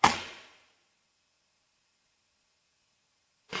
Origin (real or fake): fake